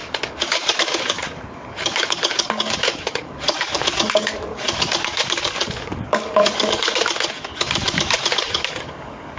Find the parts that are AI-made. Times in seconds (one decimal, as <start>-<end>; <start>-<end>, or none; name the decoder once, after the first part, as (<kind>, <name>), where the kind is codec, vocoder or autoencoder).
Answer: 0.0-9.4 (codec, DAC)